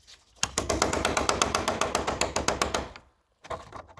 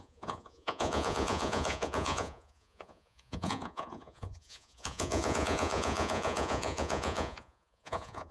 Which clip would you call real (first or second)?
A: first